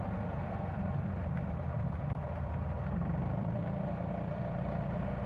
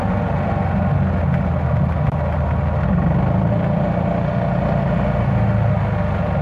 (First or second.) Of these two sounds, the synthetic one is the first